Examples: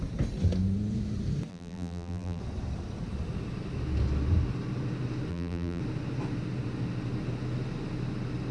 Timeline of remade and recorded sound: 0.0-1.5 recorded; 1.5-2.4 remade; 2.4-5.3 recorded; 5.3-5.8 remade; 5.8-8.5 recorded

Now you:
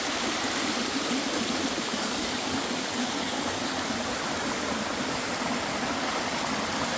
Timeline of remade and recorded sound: 0.0-1.8 recorded; 1.8-4.0 remade; 4.0-7.0 recorded

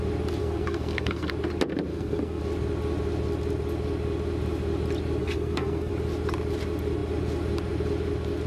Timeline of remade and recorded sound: 0.0-0.4 recorded; 0.4-1.3 remade; 1.3-1.9 recorded; 1.9-2.4 remade; 2.4-5.2 recorded; 5.2-5.9 remade; 5.9-8.5 recorded

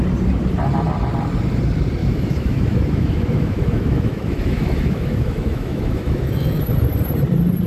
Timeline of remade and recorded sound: 0.0-2.0 recorded; 2.0-6.6 remade; 6.6-7.7 recorded

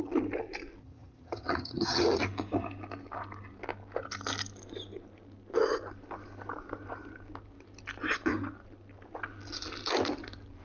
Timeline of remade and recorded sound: 0.0-0.8 recorded; 0.8-2.2 remade; 2.2-10.6 recorded

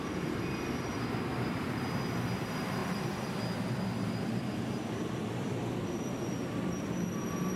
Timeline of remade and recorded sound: 0.0-2.8 remade; 2.8-4.2 recorded; 4.2-7.6 remade

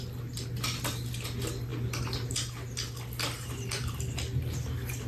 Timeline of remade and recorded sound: 0.0-5.1 recorded